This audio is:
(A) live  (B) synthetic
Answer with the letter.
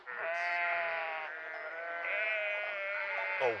A